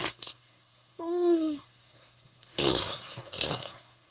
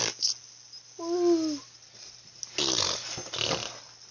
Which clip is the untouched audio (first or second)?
second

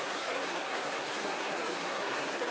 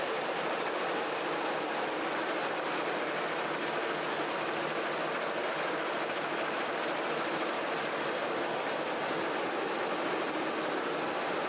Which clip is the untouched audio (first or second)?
second